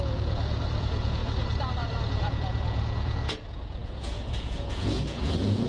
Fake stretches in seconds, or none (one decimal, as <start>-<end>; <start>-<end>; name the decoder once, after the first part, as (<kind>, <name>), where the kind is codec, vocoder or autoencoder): 0.0-1.2 (vocoder, Vocos); 2.0-5.7